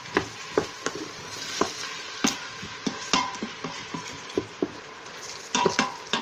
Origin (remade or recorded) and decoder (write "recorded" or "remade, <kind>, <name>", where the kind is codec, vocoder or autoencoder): recorded